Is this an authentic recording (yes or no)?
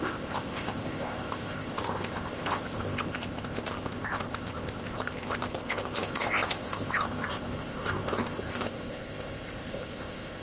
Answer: no